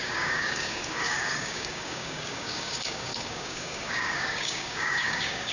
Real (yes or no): no